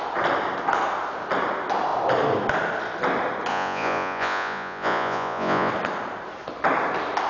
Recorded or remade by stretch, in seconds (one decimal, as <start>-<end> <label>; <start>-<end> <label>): 0.0-3.5 recorded; 3.5-5.7 remade; 5.7-7.3 recorded